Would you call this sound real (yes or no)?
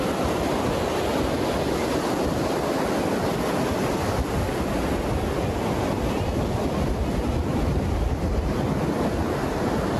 yes